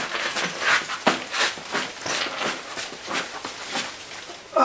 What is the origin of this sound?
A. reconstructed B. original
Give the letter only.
B